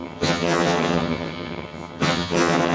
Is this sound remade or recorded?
remade